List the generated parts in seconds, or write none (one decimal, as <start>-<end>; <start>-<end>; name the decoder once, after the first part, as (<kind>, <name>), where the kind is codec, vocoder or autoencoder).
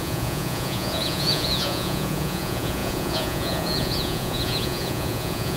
0.0-5.6 (vocoder, Vocos)